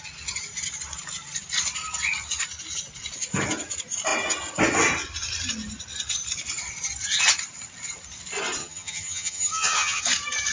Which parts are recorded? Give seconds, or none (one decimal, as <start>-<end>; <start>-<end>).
0.0-8.6; 10.0-10.5

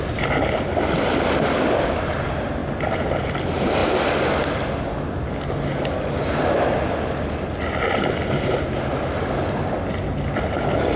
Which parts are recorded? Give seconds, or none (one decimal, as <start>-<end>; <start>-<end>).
0.0-11.0